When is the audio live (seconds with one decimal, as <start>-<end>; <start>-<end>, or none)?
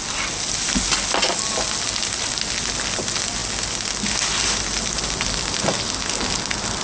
0.0-6.8